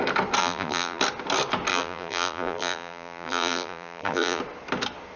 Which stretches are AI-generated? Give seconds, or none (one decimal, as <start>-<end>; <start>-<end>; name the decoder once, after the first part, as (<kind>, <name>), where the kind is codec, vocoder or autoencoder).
0.4-1.0 (vocoder, BigVGAN v2); 1.7-4.4

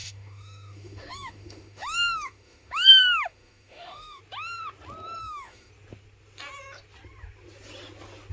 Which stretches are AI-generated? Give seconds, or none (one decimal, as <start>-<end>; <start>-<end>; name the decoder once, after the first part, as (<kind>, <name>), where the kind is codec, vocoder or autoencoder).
0.0-4.2 (autoencoder, DAC-VAE); 5.2-5.7

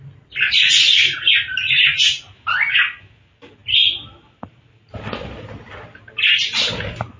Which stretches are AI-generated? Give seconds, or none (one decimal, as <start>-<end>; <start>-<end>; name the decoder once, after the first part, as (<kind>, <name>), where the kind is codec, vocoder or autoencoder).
none

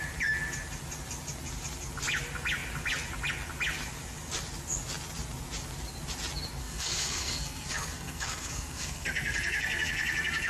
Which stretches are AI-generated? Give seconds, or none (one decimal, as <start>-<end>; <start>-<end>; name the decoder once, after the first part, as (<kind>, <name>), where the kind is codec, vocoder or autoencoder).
6.6-10.5 (codec, SNAC)

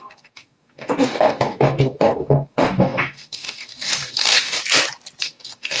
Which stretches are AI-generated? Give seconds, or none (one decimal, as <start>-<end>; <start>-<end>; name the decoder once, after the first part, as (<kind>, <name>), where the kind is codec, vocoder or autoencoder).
0.0-4.6 (codec, DAC); 5.2-5.8

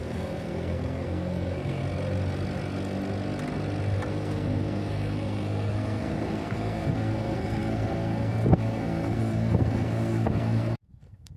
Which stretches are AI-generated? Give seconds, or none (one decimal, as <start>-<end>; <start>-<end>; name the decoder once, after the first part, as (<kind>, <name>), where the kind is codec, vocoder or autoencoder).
0.0-1.8 (codec, SNAC); 4.1-11.4

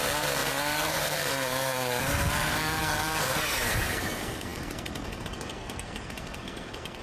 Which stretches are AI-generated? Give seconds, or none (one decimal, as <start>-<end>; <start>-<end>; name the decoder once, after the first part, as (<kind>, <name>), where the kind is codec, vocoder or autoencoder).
0.0-7.0 (codec, SNAC)

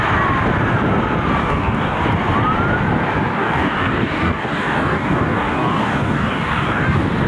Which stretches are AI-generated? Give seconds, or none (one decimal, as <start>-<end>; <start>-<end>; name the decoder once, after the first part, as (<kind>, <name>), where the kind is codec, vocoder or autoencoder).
1.4-2.0 (codec, DAC); 3.3-7.3